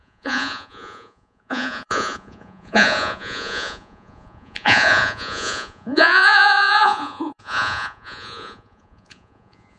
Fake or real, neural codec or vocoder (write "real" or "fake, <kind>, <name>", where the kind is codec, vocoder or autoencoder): fake, vocoder, Vocos